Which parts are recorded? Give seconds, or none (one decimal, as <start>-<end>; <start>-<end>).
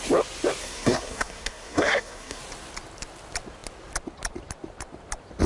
0.0-0.6; 2.4-5.5